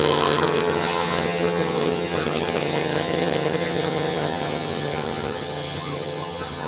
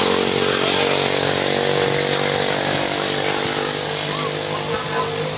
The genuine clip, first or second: second